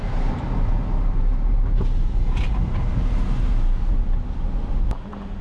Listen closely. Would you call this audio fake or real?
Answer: real